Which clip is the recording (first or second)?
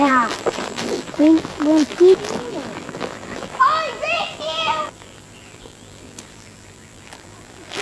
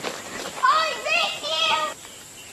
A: second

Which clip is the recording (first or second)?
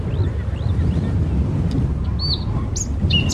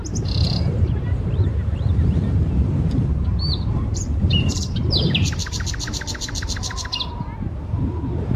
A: first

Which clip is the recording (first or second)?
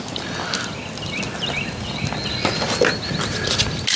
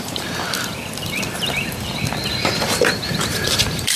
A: first